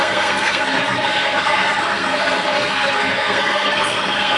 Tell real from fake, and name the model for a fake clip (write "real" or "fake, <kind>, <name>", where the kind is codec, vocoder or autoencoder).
fake, codec, SNAC